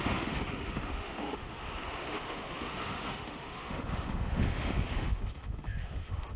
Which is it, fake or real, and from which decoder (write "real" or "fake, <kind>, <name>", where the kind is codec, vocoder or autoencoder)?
fake, autoencoder, DAC-VAE